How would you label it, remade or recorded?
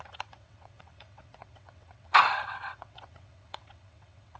remade